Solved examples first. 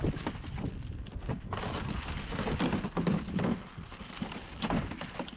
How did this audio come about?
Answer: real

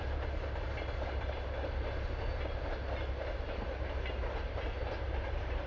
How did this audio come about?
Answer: real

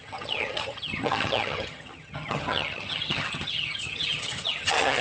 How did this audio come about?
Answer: fake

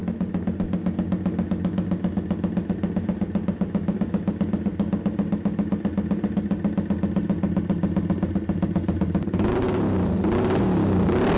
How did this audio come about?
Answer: real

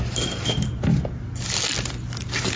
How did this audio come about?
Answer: real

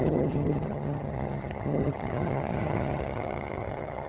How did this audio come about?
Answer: fake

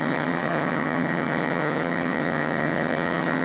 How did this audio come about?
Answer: fake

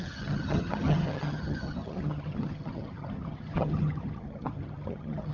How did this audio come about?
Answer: fake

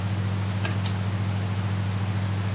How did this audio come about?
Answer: real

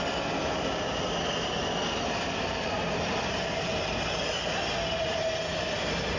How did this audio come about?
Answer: real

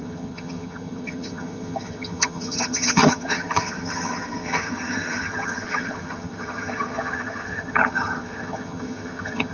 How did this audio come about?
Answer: fake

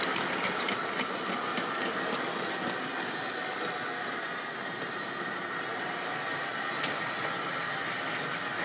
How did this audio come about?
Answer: real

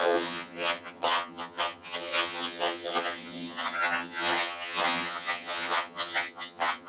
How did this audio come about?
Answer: fake